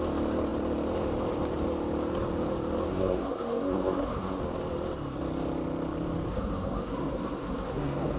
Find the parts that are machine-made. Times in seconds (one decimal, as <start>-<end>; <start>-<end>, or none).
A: 2.9-4.4; 6.3-8.2